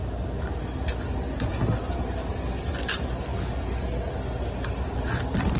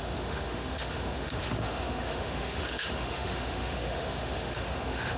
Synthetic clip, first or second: second